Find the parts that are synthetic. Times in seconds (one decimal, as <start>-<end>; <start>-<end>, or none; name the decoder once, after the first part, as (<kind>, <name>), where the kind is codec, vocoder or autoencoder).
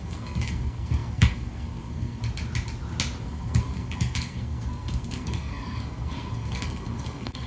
0.0-2.2 (codec, SNAC); 3.2-7.5